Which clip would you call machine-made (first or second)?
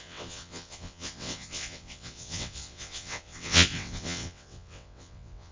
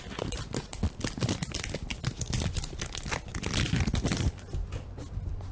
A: first